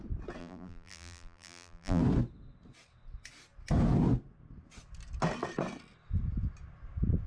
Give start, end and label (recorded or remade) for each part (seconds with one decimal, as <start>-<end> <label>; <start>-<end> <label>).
0.0-0.4 recorded; 0.4-2.0 remade; 2.0-7.3 recorded